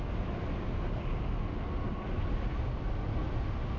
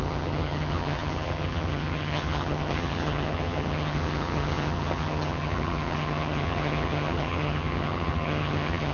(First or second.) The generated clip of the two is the second